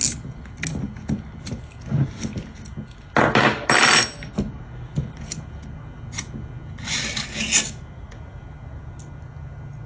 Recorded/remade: recorded